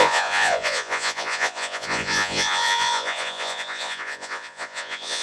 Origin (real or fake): fake